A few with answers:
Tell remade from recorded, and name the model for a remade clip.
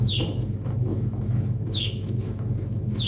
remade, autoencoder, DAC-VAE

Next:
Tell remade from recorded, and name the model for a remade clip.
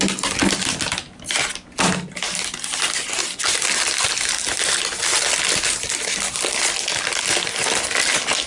recorded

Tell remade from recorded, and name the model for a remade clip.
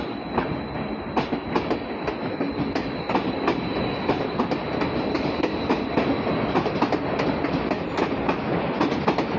recorded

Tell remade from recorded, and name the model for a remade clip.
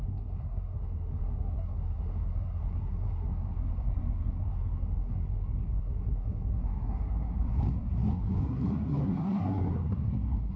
remade, codec, SNAC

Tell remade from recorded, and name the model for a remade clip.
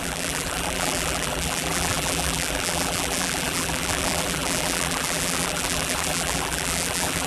remade, vocoder, BigVGAN v2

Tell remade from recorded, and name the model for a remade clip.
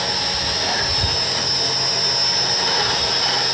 recorded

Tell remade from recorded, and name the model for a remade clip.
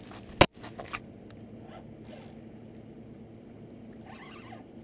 recorded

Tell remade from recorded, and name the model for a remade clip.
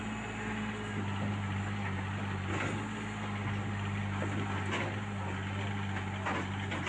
recorded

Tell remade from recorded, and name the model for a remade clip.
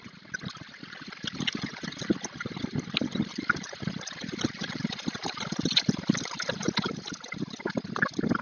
recorded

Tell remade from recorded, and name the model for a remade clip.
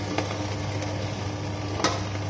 recorded